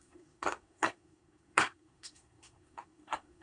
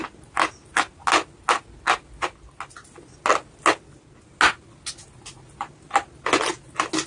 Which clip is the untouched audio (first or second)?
second